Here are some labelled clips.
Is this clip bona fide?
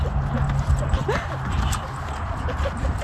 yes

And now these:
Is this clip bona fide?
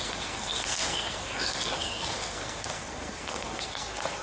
no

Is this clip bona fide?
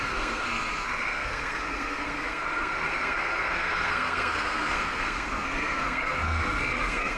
no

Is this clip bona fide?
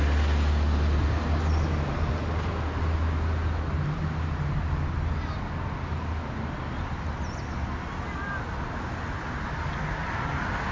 yes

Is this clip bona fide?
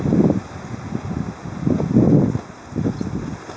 yes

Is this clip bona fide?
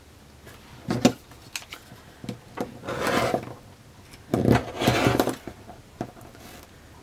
yes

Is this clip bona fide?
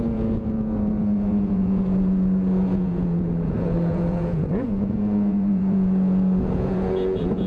no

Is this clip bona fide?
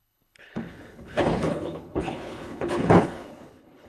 no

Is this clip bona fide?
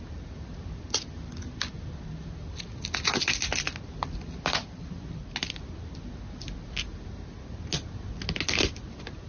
yes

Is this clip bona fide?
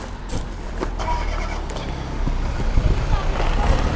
yes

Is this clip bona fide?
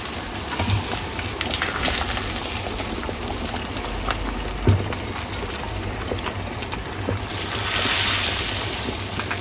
yes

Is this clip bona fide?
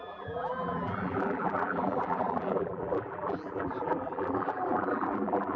no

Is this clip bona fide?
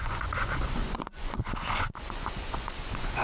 no